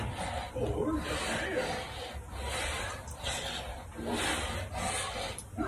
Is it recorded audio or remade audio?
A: recorded